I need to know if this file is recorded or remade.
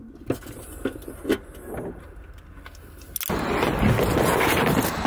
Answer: recorded